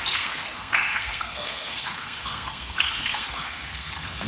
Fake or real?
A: fake